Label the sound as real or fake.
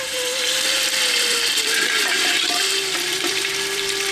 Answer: fake